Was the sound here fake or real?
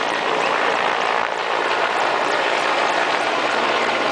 fake